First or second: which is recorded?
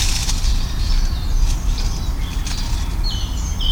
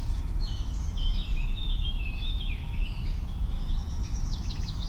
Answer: first